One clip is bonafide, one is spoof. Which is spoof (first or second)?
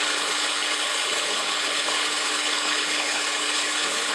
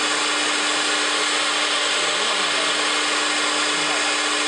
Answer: first